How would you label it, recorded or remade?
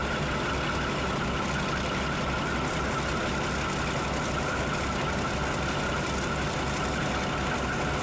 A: recorded